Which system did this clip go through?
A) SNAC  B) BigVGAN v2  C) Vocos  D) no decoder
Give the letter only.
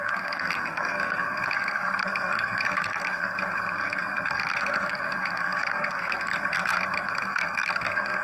A